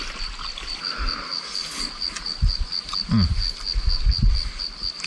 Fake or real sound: real